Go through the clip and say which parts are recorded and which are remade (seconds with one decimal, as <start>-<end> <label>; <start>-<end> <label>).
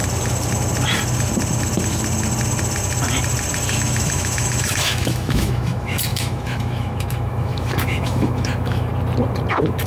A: 0.0-3.7 recorded; 3.7-8.9 remade; 8.9-9.5 recorded; 9.5-9.9 remade